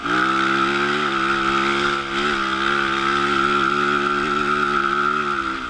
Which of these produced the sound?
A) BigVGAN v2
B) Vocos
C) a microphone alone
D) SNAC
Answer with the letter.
C